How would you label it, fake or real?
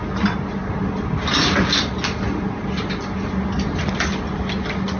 real